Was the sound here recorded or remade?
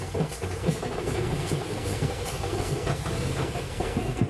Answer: remade